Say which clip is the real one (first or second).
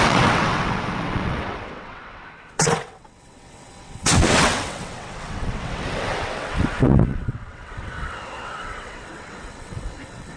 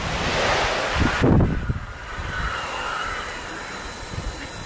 second